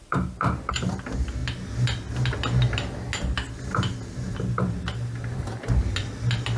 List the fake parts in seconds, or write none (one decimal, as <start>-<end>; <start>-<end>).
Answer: 0.0-1.4; 3.7-5.8